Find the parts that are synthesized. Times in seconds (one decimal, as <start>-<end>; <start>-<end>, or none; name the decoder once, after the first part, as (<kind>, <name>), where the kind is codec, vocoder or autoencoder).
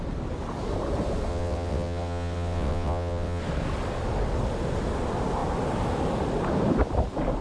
1.3-3.4 (vocoder, WaveNeXt)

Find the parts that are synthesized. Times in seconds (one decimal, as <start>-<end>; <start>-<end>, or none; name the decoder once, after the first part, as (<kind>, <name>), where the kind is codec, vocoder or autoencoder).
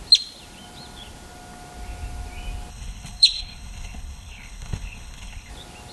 2.7-5.5 (codec, HILCodec)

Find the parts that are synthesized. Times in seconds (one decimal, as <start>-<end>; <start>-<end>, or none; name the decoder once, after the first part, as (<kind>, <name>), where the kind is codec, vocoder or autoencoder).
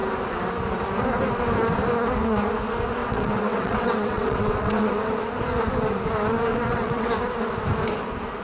3.0-5.1 (vocoder, WaveNeXt); 6.5-7.1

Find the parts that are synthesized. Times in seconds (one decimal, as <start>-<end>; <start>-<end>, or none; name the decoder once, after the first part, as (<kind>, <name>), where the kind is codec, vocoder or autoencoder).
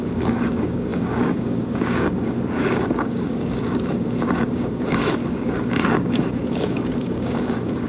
0.0-7.9 (codec, DAC)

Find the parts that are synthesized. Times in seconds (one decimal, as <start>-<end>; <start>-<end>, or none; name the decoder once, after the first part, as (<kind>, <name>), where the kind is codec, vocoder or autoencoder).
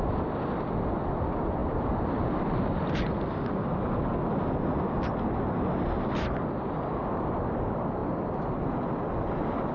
none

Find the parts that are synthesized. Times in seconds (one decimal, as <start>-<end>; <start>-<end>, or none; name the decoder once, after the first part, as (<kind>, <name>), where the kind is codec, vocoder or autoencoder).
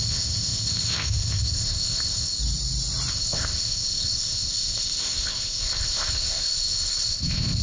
0.0-2.4 (codec, ZipCodec); 3.1-7.6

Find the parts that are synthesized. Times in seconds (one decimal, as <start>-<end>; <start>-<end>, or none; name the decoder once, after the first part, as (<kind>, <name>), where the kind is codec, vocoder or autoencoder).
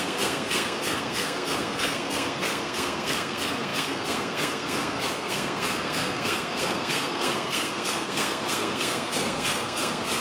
0.0-10.2 (codec, SNAC)